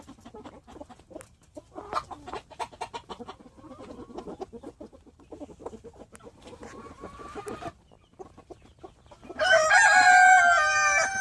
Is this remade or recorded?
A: recorded